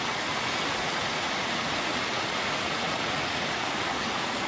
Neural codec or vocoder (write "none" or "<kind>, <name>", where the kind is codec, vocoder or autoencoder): vocoder, Vocos